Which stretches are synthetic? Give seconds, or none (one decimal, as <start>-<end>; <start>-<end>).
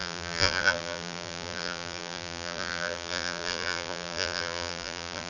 0.0-5.3